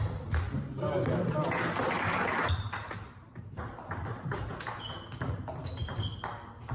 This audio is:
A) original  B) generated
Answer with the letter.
A